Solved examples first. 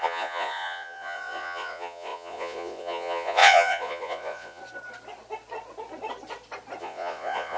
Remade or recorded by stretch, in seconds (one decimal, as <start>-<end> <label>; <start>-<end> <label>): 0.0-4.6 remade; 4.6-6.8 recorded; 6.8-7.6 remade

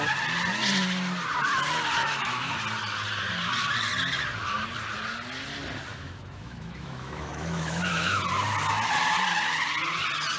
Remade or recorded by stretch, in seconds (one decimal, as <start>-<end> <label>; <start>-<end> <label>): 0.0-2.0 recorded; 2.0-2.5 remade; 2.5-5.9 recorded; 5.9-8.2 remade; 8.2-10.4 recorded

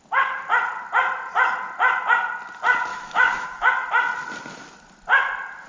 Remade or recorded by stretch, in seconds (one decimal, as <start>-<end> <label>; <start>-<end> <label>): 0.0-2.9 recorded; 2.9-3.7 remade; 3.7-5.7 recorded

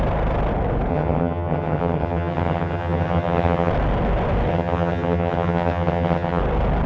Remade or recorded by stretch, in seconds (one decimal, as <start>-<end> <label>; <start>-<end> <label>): 0.0-0.9 recorded; 0.9-3.7 remade; 3.7-4.5 recorded; 4.5-6.4 remade; 6.4-6.9 recorded